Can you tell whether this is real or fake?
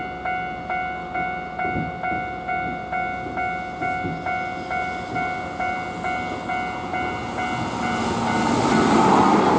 real